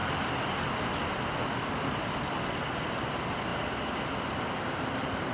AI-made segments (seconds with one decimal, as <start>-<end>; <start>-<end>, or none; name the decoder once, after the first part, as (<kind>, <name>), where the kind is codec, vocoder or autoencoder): none